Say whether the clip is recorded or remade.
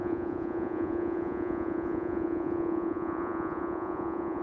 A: remade